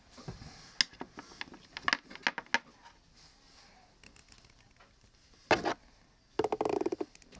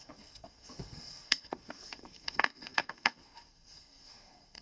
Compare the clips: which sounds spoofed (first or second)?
second